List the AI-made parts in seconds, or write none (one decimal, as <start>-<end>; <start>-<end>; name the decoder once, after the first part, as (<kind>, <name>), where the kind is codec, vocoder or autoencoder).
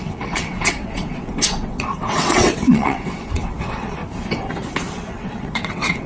0.0-4.0 (vocoder, WaveNeXt); 4.9-6.1